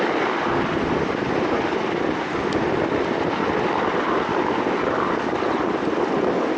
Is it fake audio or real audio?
real